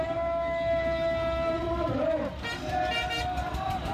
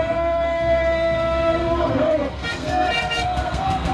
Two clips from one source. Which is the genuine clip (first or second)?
first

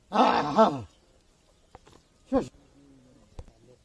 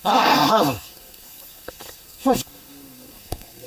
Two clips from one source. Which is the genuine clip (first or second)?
first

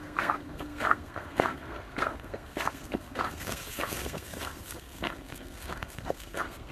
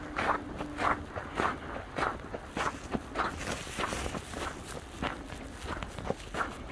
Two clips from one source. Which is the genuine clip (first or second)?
second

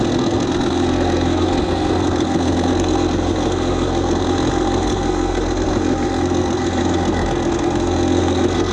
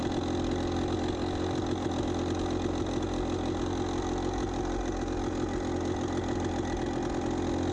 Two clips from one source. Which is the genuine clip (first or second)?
second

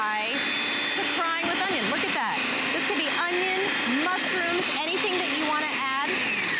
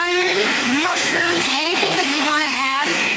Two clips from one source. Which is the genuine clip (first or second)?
first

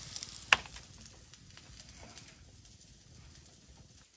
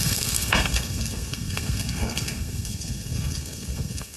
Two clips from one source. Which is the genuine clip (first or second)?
first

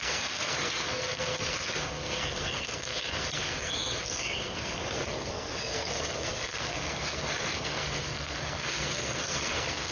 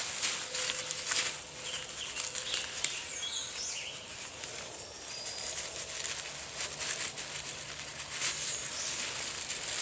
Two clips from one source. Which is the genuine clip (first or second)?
second